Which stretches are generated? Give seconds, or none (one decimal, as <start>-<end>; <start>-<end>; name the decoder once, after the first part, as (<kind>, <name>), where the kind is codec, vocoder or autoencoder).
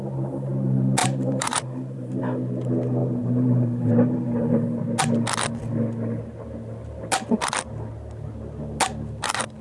1.0-2.2 (vocoder, BigVGAN v2); 3.0-4.8